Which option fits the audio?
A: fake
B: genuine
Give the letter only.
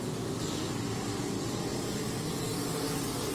B